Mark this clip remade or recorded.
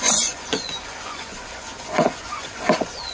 remade